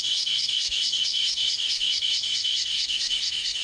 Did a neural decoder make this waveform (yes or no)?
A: yes